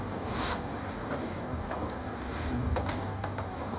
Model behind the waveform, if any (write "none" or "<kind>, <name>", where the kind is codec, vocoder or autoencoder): codec, DAC